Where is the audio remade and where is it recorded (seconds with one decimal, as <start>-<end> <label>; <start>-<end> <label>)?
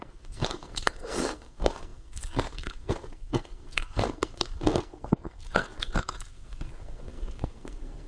0.0-8.1 remade